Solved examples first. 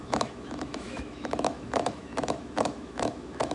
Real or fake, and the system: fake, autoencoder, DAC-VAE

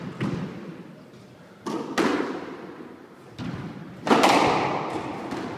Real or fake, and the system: real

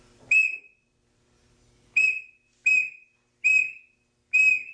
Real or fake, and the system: real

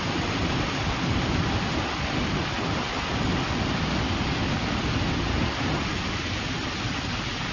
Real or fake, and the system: real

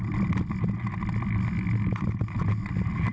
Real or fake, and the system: real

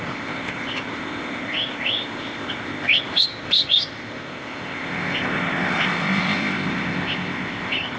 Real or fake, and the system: fake, codec, ZipCodec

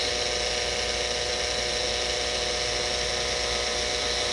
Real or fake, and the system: real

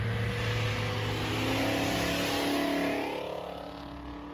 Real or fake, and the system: real